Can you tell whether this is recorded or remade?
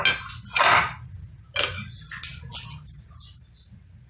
recorded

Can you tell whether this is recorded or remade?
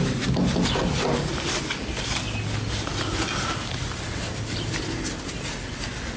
recorded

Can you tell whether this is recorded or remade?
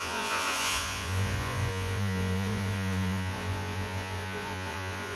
remade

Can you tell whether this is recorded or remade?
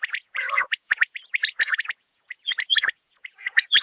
remade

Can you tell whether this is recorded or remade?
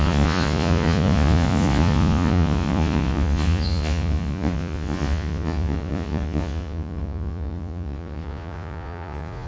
remade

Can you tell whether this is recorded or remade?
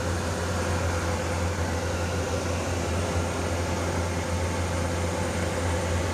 recorded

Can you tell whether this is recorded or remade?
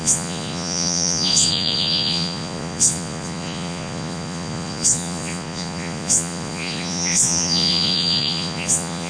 remade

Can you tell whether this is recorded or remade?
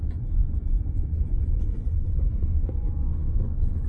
remade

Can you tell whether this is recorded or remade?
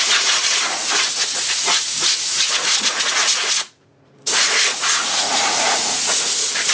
remade